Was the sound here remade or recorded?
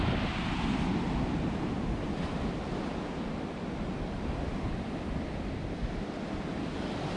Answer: recorded